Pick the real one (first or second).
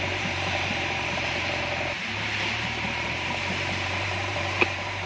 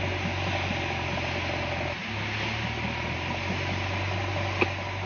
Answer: second